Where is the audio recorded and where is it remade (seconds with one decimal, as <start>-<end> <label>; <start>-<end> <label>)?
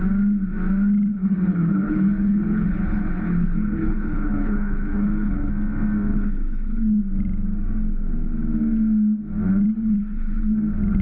0.0-1.1 recorded; 1.1-5.5 remade; 5.5-6.1 recorded; 6.1-7.0 remade; 7.0-9.7 recorded; 9.7-10.4 remade; 10.4-11.0 recorded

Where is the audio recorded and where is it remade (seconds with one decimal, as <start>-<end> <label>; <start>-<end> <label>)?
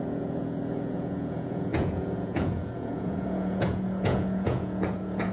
0.0-5.3 remade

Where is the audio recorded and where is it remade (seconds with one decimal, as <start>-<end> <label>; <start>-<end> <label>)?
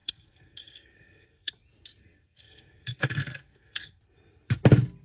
0.0-1.5 remade; 1.5-2.0 recorded; 2.0-4.0 remade; 4.0-5.0 recorded